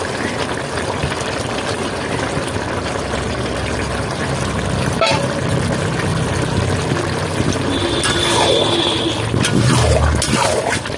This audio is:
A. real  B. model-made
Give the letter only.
A